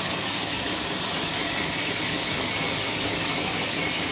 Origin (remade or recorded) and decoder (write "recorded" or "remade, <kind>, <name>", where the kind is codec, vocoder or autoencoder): remade, codec, DAC